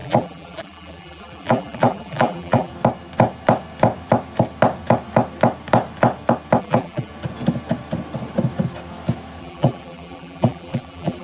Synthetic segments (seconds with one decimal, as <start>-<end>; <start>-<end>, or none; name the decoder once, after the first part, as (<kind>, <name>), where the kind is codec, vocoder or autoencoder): 0.0-2.7 (vocoder, BigVGAN v2); 6.6-7.1; 9.4-11.2